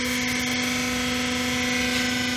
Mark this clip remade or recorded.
recorded